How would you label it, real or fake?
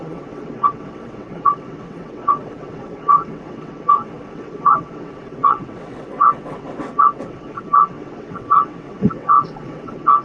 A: fake